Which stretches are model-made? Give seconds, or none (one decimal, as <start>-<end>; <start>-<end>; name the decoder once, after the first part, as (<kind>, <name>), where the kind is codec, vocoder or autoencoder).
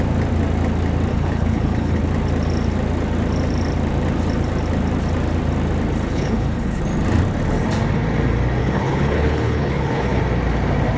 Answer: 1.1-2.0 (codec, HILCodec); 6.1-6.8; 8.6-10.2